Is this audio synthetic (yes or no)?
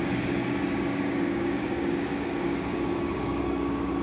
yes